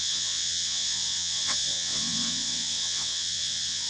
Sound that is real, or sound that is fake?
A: fake